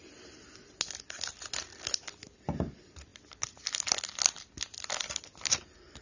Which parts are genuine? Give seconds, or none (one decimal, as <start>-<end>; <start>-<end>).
0.0-6.0